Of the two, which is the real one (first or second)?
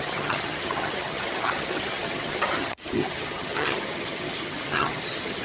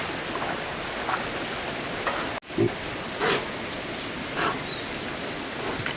second